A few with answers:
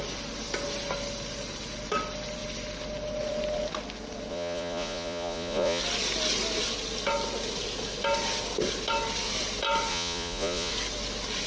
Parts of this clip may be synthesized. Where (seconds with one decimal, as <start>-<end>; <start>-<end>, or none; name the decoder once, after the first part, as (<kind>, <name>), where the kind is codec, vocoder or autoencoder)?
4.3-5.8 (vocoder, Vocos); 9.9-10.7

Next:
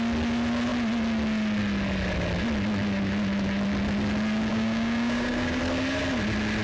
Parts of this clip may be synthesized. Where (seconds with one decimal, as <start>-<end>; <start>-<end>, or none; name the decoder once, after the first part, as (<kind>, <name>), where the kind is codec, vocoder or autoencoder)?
4.5-5.6 (codec, DAC)

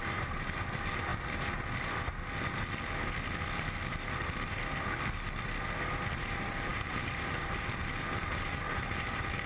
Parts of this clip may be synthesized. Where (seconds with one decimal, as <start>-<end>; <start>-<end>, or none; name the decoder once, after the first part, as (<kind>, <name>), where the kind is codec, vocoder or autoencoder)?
0.0-1.1 (vocoder, BigVGAN v2); 6.1-9.5

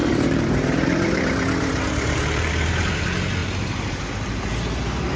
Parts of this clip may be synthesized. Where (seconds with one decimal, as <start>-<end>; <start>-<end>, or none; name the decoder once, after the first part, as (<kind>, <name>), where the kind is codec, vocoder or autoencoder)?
0.0-2.5 (vocoder, BigVGAN v2); 3.4-4.0

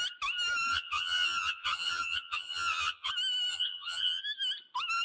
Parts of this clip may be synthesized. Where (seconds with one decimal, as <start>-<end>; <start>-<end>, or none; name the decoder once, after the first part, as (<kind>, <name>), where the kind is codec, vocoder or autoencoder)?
0.7-3.1 (vocoder, HiFi-GAN); 3.5-4.2

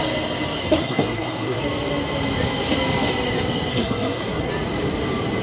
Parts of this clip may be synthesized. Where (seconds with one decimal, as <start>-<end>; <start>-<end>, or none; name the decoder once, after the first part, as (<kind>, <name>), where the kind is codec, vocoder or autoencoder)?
0.6-1.6 (codec, SNAC); 3.7-4.5

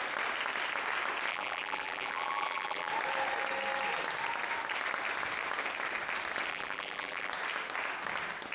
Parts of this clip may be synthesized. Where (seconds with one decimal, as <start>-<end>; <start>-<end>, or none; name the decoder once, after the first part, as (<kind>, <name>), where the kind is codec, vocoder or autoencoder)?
1.3-2.9 (vocoder, BigVGAN v2); 6.5-7.3